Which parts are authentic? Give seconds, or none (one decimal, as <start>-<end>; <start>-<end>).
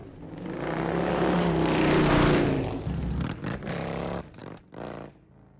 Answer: 3.0-3.6; 4.4-5.6